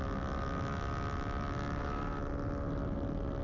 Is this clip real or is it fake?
real